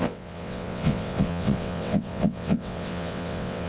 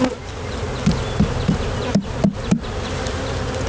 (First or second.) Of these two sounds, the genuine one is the second